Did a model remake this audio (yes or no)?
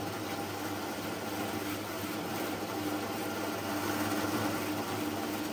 no